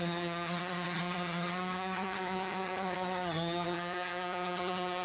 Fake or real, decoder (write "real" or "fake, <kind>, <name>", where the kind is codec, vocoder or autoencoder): fake, vocoder, HiFi-GAN